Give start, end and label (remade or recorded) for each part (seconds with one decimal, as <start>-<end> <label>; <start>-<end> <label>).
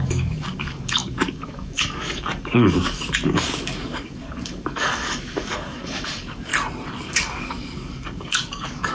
0.0-6.5 remade; 6.5-7.0 recorded; 7.0-8.9 remade